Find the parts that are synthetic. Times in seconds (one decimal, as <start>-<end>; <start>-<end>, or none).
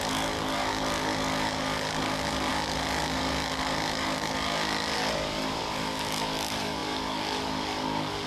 0.0-8.3